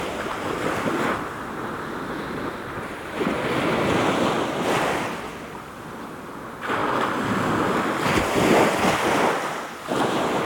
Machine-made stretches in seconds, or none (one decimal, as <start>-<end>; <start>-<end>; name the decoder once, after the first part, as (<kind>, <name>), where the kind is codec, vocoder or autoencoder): none